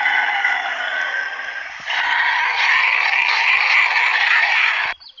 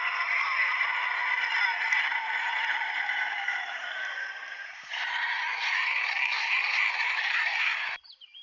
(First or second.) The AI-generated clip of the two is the second